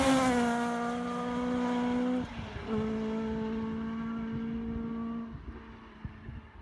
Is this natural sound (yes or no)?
yes